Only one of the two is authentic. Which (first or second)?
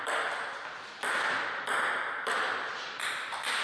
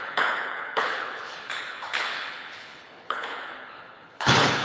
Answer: first